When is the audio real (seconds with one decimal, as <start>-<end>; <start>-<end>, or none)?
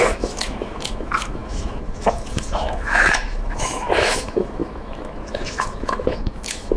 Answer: none